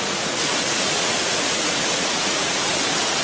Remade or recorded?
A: remade